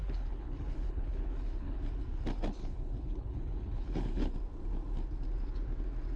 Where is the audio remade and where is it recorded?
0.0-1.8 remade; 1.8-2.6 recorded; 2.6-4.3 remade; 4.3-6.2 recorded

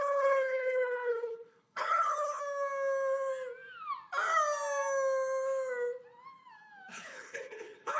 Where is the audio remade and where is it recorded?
0.0-2.4 remade; 2.4-6.9 recorded; 6.9-8.0 remade